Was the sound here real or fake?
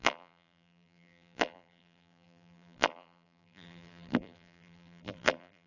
fake